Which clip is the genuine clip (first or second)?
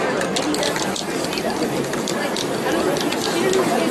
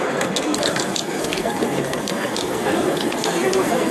first